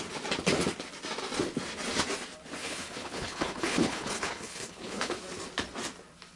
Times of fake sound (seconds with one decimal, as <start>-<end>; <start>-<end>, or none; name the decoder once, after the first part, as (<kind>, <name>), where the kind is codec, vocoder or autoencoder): 2.6-5.2 (codec, HILCodec)